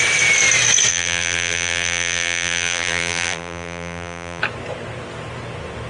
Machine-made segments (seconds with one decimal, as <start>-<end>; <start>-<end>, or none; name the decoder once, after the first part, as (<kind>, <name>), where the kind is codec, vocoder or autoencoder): 0.9-4.4 (vocoder, BigVGAN v2)